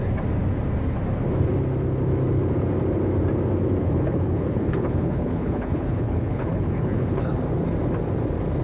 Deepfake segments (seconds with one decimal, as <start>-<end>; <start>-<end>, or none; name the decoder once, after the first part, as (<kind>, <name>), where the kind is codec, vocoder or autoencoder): 3.8-7.4 (codec, HILCodec)